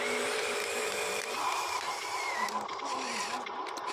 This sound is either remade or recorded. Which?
remade